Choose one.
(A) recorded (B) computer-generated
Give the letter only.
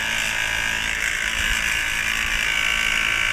B